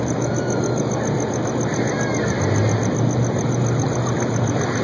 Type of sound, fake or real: real